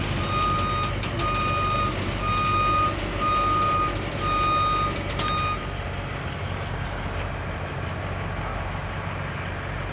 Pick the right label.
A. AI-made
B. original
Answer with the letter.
B